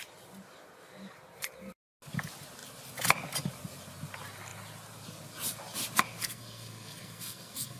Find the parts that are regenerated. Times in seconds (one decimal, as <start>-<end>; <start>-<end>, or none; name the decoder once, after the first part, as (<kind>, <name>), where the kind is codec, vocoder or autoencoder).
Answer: 6.2-7.8 (codec, SNAC)